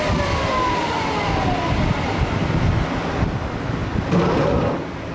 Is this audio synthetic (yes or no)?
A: no